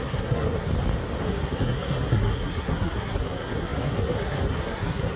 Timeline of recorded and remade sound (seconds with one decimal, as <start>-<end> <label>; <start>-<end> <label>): 0.0-0.7 remade; 0.7-1.2 recorded; 1.2-5.2 remade